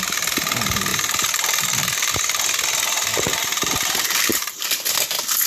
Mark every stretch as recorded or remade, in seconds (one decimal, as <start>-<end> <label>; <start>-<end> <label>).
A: 0.0-0.9 recorded; 0.9-2.1 remade; 2.1-3.1 recorded; 3.1-4.6 remade; 4.6-5.5 recorded